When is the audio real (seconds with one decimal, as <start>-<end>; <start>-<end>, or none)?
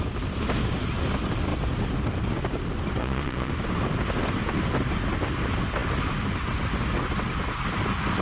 0.0-3.0; 3.5-8.2